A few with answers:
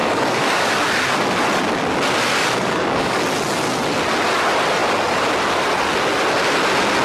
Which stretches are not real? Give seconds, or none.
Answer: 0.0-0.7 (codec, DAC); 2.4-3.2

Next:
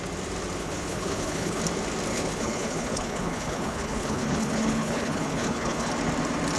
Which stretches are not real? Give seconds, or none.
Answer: 0.6-1.6 (codec, HILCodec); 2.1-5.9

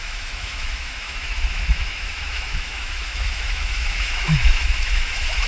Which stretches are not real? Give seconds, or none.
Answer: 0.0-5.5 (autoencoder, DAC-VAE)

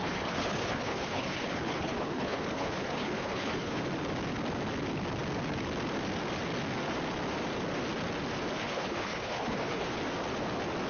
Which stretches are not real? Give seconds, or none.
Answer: 0.0-3.8 (codec, HILCodec); 8.6-10.0